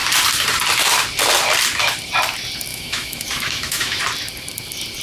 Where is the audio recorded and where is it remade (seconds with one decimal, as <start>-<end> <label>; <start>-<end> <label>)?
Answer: 0.0-2.7 recorded; 2.7-4.0 remade; 4.0-5.0 recorded